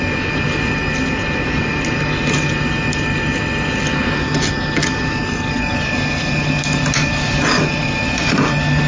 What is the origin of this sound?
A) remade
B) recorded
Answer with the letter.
B